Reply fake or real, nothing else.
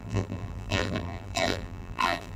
fake